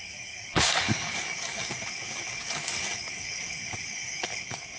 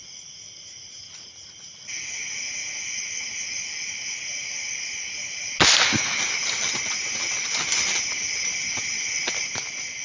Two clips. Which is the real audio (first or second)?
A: second